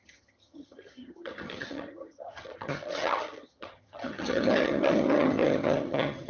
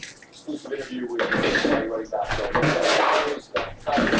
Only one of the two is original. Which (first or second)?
second